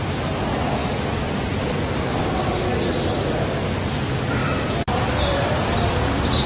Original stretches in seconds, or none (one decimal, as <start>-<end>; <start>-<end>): 0.0-4.4; 5.8-6.5